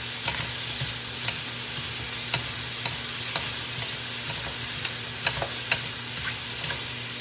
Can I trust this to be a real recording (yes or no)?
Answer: yes